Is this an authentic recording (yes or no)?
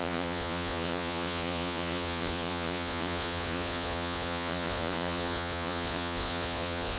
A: no